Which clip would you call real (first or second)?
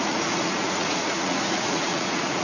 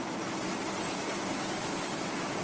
second